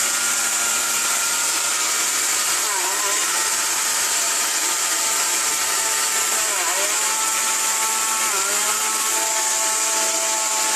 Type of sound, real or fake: real